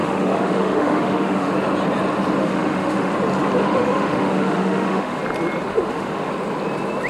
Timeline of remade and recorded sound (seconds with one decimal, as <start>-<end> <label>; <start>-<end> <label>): 0.0-1.5 remade; 1.5-2.4 recorded; 2.4-3.1 remade; 3.1-3.6 recorded; 3.6-5.2 remade; 5.2-5.7 recorded; 5.7-6.3 remade; 6.3-7.1 recorded